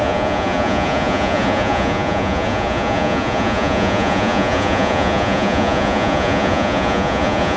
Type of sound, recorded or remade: remade